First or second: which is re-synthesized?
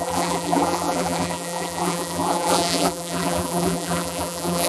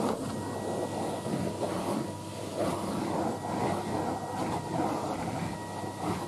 first